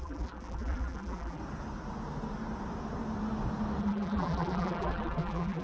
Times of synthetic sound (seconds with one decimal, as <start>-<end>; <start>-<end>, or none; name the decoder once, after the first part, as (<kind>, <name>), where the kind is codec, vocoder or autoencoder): 0.0-1.4 (vocoder, BigVGAN v2); 3.8-5.6